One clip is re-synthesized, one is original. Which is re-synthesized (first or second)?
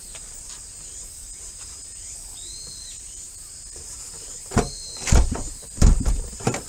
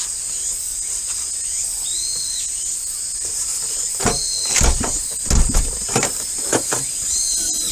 first